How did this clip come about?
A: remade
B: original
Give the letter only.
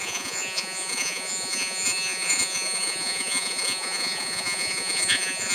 A